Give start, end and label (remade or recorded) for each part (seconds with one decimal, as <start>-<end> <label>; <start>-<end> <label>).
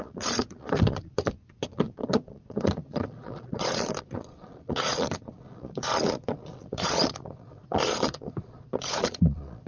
0.0-9.7 remade